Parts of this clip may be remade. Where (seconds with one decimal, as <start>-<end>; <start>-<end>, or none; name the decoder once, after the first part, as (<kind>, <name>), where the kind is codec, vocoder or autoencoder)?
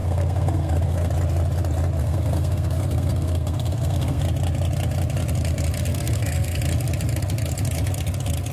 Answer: 0.0-1.1 (codec, SNAC); 2.0-4.2; 5.9-6.6